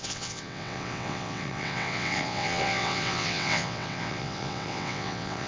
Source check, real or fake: fake